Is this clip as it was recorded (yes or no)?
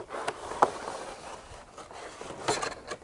yes